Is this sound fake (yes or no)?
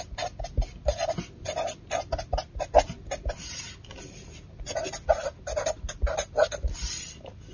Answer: no